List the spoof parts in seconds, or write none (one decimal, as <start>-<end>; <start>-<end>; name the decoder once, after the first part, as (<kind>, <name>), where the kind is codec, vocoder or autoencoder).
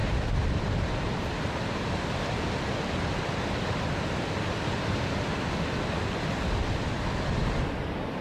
0.0-2.1 (vocoder, BigVGAN v2); 7.4-8.2